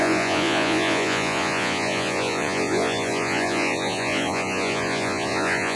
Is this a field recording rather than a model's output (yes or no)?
no